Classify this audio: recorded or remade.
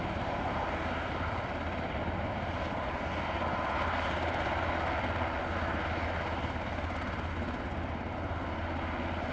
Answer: recorded